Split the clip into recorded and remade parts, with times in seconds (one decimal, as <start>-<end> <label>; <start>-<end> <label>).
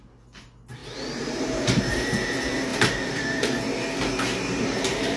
0.0-0.8 recorded; 0.8-1.8 remade; 1.8-2.7 recorded; 2.7-3.6 remade; 3.6-4.3 recorded; 4.3-5.2 remade